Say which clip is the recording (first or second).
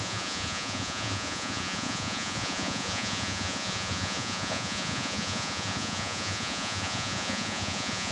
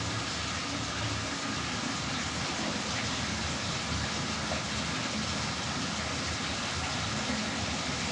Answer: second